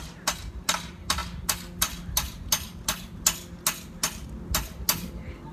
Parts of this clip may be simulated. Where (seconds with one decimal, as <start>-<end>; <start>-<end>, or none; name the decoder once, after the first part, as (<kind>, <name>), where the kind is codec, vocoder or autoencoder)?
none